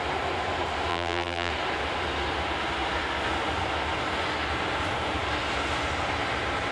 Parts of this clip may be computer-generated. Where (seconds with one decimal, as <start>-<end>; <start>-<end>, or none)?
0.9-1.5